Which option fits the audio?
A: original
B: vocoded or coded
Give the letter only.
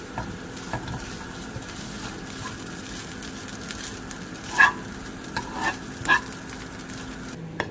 A